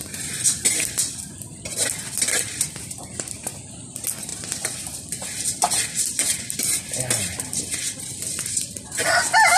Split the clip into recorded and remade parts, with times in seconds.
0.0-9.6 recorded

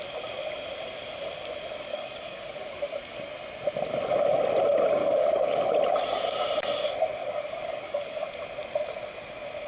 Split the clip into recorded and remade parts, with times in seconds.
0.0-1.9 recorded; 1.9-3.3 remade; 3.3-5.0 recorded; 5.0-5.6 remade; 5.6-7.2 recorded; 7.2-8.3 remade; 8.3-9.7 recorded

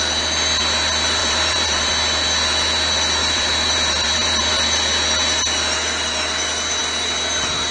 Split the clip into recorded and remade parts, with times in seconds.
0.0-1.2 recorded; 1.2-1.9 remade; 1.9-3.2 recorded; 3.2-4.5 remade; 4.5-7.7 recorded

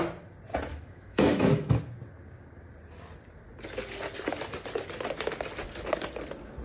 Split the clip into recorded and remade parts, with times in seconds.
0.0-0.7 recorded; 0.7-1.8 remade; 1.8-6.6 recorded

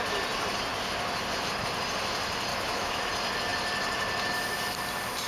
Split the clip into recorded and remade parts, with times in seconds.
0.0-2.5 recorded; 2.5-3.1 remade; 3.1-5.3 recorded

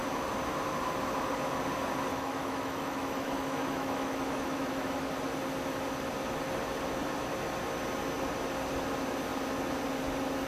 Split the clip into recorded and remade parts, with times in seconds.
0.0-2.1 recorded; 2.1-5.1 remade; 5.1-10.5 recorded